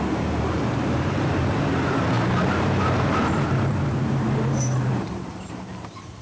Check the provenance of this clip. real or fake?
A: fake